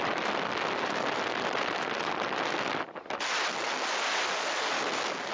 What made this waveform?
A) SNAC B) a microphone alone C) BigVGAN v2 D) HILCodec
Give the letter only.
B